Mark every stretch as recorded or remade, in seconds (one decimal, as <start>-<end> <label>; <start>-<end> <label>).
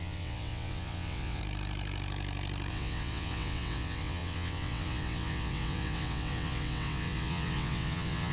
0.0-1.4 remade; 1.4-2.7 recorded; 2.7-8.3 remade